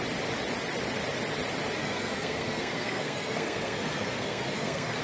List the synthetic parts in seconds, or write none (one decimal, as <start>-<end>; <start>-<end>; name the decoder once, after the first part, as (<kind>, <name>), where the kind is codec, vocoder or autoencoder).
1.8-5.0 (codec, SNAC)